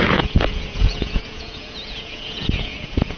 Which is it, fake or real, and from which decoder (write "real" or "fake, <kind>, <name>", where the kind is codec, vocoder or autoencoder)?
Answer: fake, vocoder, Vocos